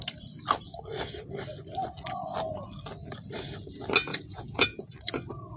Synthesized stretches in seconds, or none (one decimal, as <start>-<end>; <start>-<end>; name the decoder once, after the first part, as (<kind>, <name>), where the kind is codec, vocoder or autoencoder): 4.1-4.8 (vocoder, Vocos)